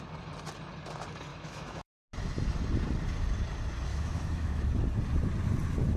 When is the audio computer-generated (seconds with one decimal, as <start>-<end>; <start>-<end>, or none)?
1.3-2.0; 3.9-4.7